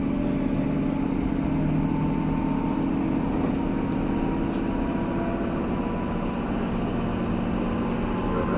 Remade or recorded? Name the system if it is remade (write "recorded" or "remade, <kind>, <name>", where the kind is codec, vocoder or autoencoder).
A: recorded